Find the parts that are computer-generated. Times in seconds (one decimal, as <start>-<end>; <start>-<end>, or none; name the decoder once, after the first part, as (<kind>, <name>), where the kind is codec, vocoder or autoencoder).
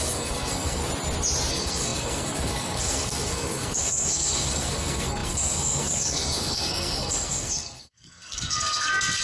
0.0-0.8 (codec, SNAC); 1.5-9.2